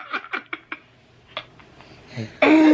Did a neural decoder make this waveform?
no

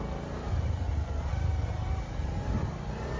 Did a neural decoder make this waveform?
no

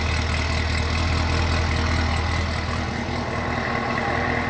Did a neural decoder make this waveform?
no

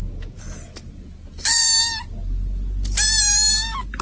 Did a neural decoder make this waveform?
no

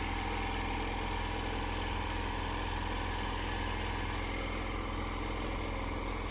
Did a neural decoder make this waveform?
no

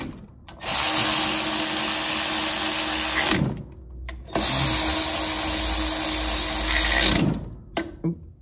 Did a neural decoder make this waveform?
no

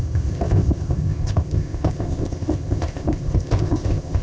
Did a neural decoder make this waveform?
yes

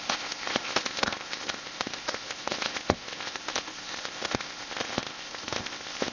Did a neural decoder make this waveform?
yes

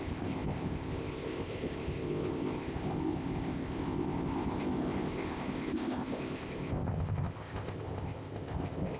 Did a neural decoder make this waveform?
yes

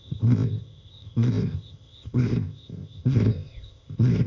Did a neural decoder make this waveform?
yes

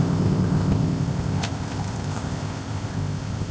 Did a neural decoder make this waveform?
yes